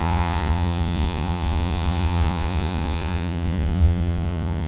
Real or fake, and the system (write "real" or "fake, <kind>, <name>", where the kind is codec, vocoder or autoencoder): fake, vocoder, Vocos